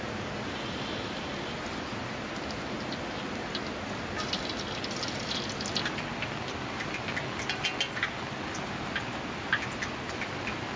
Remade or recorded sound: recorded